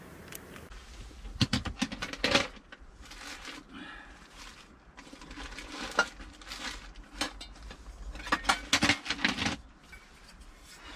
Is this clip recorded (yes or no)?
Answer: yes